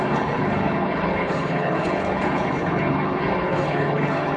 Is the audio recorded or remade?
remade